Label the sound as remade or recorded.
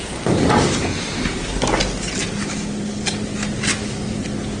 recorded